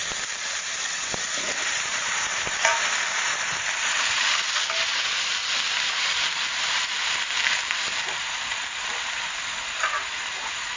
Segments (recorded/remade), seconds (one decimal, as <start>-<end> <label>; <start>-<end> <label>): 0.0-10.8 remade